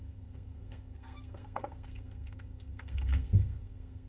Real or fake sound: fake